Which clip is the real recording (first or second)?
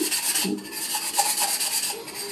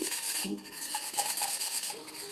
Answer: first